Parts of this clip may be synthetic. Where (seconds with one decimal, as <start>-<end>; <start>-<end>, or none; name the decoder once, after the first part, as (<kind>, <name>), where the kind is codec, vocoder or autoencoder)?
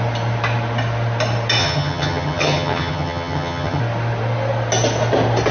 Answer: 1.6-3.8 (vocoder, HiFi-GAN)